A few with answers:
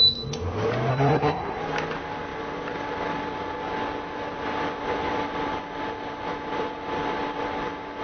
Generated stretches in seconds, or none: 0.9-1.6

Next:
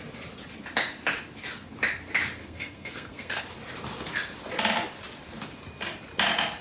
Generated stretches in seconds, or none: 2.4-3.4

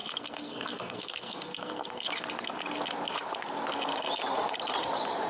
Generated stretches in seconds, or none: 0.0-2.1

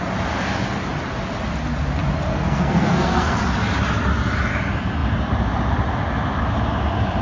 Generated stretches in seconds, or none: 2.3-3.4

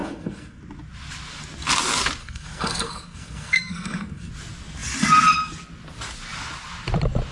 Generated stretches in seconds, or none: 0.0-0.6; 2.2-4.3

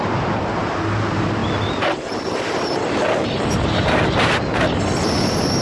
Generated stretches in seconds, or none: none